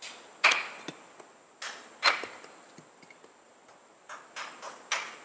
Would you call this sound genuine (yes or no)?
yes